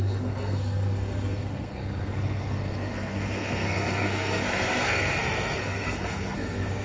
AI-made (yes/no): yes